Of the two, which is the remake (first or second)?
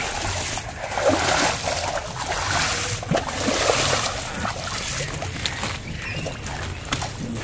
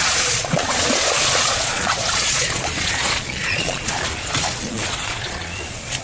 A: second